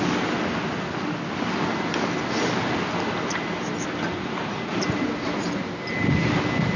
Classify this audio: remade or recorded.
recorded